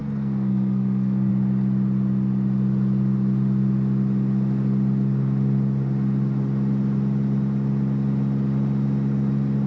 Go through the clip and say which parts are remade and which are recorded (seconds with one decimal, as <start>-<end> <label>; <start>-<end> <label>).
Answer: 0.0-1.3 remade; 1.3-9.7 recorded